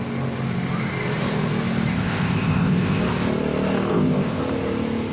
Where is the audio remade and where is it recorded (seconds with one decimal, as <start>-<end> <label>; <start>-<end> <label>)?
0.0-1.9 recorded; 1.9-3.0 remade; 3.0-3.9 recorded; 3.9-4.4 remade; 4.4-5.1 recorded